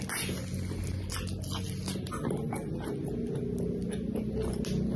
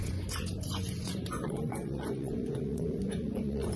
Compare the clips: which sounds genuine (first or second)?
first